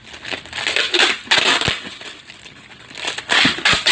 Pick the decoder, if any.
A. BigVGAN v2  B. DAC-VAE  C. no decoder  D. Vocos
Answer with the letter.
C